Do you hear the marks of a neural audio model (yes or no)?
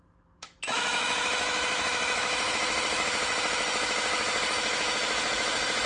yes